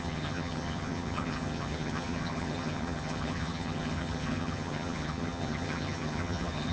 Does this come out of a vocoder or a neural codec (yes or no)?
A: yes